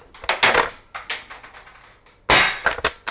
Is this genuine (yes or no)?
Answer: yes